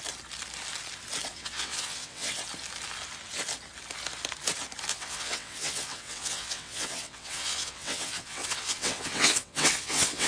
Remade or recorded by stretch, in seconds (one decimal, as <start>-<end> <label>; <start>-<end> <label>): 0.0-1.3 recorded; 1.3-2.4 remade; 2.4-4.9 recorded; 4.9-10.3 remade